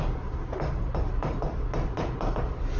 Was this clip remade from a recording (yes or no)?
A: no